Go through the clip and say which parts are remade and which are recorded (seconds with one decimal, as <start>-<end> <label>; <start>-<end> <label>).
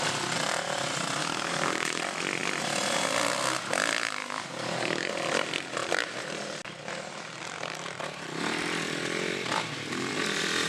0.0-1.2 recorded; 1.2-2.0 remade; 2.0-4.2 recorded; 4.2-5.1 remade; 5.1-10.7 recorded